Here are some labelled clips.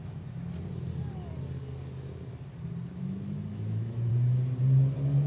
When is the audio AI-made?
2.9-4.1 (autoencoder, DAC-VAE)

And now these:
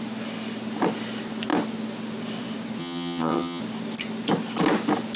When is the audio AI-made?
2.8-3.6 (vocoder, HiFi-GAN)

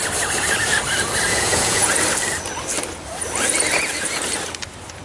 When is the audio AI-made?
1.3-1.9 (vocoder, Vocos)

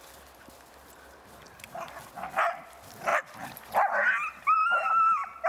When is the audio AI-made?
3.1-4.9 (vocoder, BigVGAN v2)

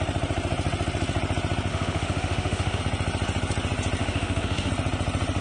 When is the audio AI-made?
1.7-2.8 (autoencoder, DAC-VAE); 4.0-4.7

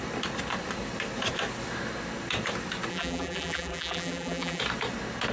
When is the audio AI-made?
2.9-4.6 (vocoder, BigVGAN v2)

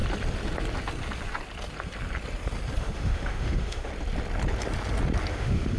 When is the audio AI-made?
2.8-3.9 (autoencoder, DAC-VAE); 5.3-5.8